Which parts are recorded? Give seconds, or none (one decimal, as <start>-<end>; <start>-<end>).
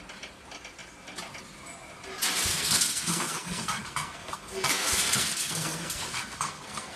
0.0-2.5